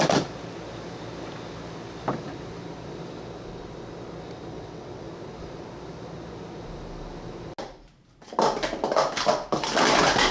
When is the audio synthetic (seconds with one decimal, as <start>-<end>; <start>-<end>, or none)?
4.5-5.1